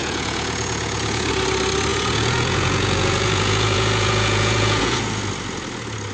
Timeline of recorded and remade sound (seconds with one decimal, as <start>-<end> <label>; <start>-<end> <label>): 0.0-1.3 remade; 1.3-1.9 recorded; 1.9-5.2 remade; 5.2-6.1 recorded